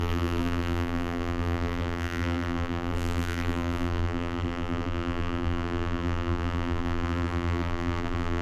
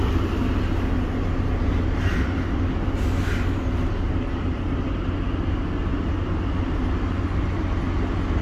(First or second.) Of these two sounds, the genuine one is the second